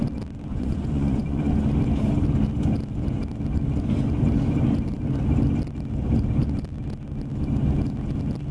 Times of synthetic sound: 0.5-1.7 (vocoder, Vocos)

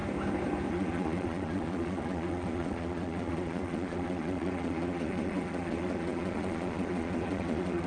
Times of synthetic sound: 0.7-7.9 (vocoder, Vocos)